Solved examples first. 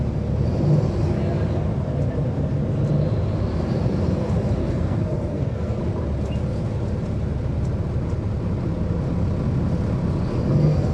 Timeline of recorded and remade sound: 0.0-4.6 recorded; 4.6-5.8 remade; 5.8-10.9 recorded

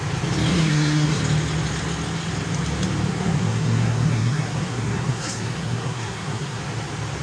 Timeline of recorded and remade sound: 0.0-0.5 recorded; 0.5-1.2 remade; 1.2-3.1 recorded; 3.1-6.6 remade; 6.6-7.2 recorded

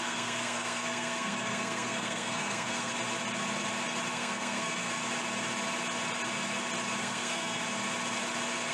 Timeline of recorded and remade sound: 0.0-2.9 remade; 2.9-4.1 recorded; 4.1-5.0 remade; 5.0-7.0 recorded; 7.0-7.6 remade; 7.6-8.7 recorded

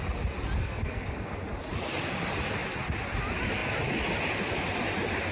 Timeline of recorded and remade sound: 0.0-0.6 recorded; 0.6-1.4 remade; 1.4-5.3 recorded

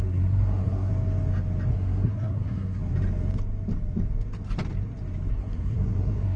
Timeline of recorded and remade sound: 0.0-0.9 remade; 0.9-1.7 recorded; 1.7-2.8 remade; 2.8-5.3 recorded; 5.3-6.4 remade

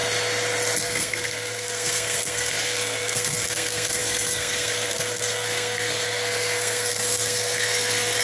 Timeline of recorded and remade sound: 0.0-0.8 recorded; 0.8-8.2 remade

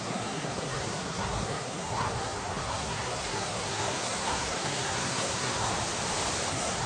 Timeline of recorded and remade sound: 0.0-5.7 remade; 5.7-6.5 recorded; 6.5-6.9 remade